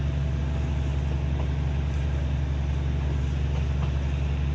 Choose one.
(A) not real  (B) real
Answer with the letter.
B